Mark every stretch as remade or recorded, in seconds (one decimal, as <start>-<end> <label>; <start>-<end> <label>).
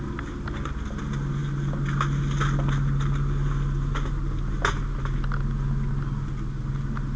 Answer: 0.0-7.2 recorded